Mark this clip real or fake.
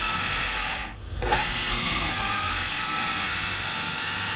fake